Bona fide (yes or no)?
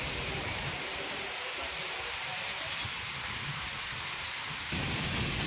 no